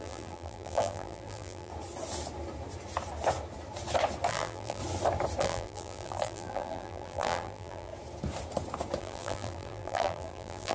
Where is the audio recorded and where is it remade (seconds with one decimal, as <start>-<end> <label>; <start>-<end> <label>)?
0.0-1.7 remade; 1.7-4.3 recorded; 4.3-4.8 remade; 4.8-5.4 recorded; 5.4-7.9 remade; 7.9-9.0 recorded; 9.0-10.7 remade